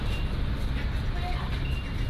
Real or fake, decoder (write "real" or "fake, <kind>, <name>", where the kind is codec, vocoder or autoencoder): real